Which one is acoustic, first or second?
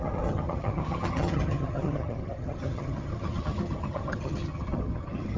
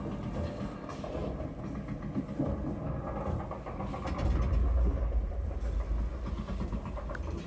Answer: second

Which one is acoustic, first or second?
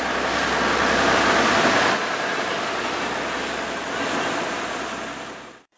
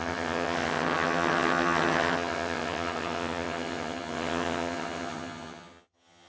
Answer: first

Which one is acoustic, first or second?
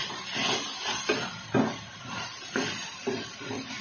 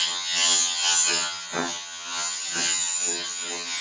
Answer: first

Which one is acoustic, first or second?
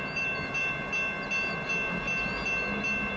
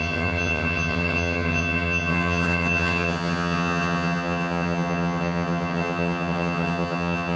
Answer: first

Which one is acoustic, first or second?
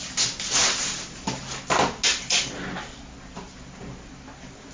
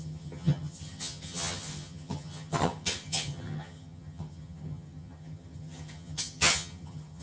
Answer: first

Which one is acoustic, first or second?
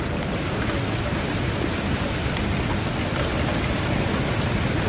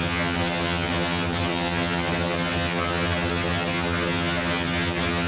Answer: first